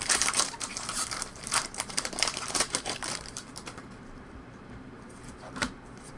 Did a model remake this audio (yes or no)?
yes